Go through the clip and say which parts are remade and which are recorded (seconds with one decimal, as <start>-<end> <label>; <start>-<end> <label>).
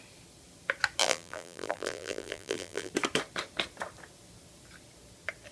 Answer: 0.0-1.0 recorded; 1.0-2.9 remade; 2.9-5.5 recorded